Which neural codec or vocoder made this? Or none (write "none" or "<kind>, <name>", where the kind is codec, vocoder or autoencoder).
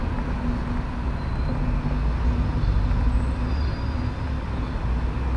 none